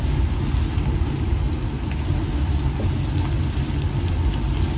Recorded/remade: recorded